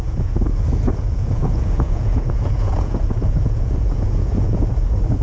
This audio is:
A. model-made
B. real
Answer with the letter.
A